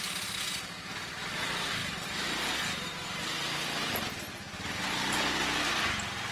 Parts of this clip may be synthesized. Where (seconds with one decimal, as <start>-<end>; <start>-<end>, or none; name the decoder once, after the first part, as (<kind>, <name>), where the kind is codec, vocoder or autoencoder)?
none